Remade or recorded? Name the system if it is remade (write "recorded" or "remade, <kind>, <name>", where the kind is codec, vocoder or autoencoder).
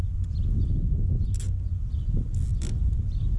recorded